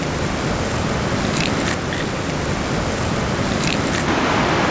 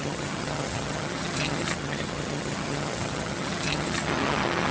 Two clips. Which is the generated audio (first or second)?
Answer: second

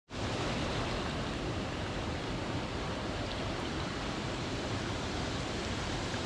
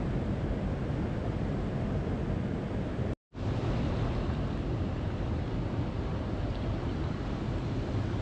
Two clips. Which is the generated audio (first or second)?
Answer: first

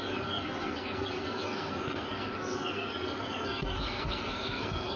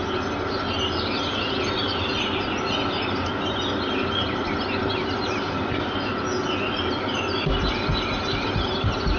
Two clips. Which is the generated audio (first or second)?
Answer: first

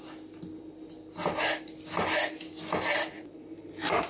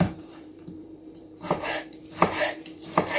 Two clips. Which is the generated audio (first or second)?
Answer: second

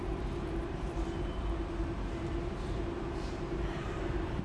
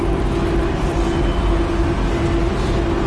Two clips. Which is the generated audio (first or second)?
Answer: first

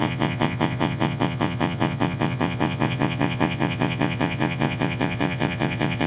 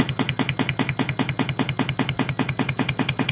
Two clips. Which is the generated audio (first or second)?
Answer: first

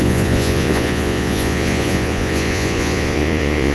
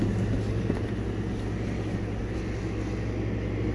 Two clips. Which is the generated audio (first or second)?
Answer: first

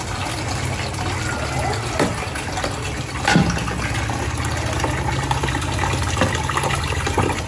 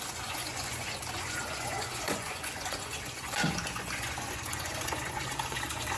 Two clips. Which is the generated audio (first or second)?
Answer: second